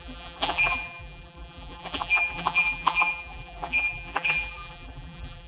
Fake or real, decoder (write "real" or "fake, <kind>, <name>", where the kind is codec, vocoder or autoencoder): fake, vocoder, BigVGAN v2